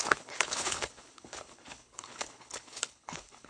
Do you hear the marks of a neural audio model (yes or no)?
yes